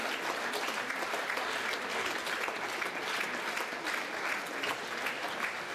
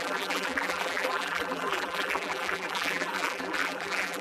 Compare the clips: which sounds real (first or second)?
first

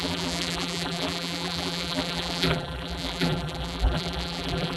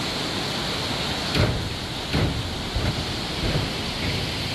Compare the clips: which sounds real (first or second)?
second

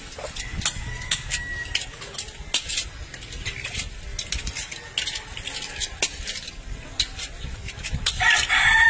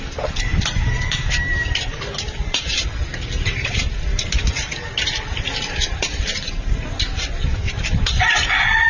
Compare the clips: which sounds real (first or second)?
first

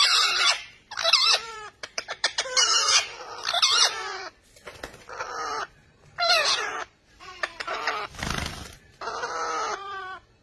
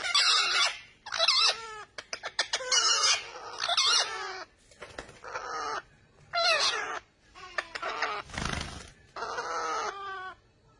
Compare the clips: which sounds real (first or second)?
second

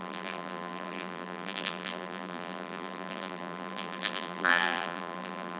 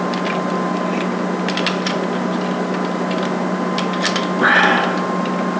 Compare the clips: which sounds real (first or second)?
second